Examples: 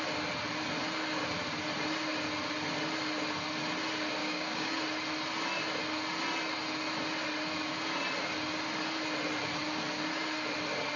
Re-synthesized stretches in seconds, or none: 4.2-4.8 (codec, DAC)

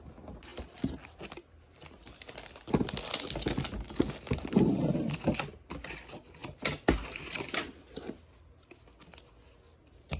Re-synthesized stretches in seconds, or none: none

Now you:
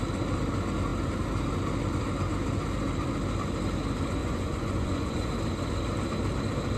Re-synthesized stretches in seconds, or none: 4.2-5.3 (vocoder, Vocos)

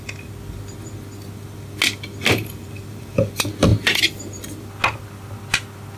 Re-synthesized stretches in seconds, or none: 2.4-3.2 (vocoder, BigVGAN v2); 3.7-4.6

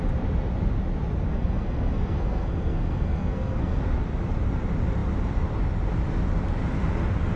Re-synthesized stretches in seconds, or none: 1.3-3.8 (codec, SNAC)

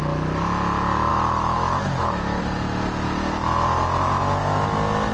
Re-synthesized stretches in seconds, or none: 1.1-2.4 (autoencoder, DAC-VAE)

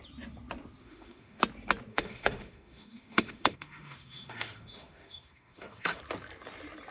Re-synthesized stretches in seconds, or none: 0.8-1.4 (autoencoder, DAC-VAE); 1.9-6.0

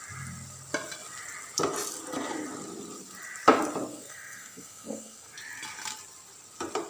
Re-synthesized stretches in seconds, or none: 3.9-5.3 (codec, SNAC)